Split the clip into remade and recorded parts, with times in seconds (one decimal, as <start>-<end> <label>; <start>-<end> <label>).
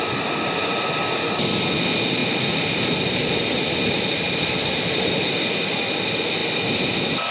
0.0-7.3 recorded